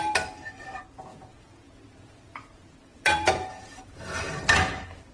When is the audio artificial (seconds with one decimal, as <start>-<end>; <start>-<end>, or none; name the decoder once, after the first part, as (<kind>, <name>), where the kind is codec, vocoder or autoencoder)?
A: 1.1-4.2 (vocoder, Vocos)